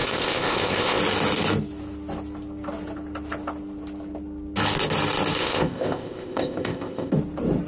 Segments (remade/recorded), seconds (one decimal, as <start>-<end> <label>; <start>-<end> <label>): 0.0-1.0 remade; 1.0-5.4 recorded; 5.4-7.1 remade; 7.1-7.7 recorded